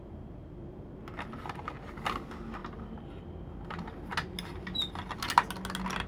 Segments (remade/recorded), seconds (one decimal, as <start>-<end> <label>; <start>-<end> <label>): 0.0-6.1 recorded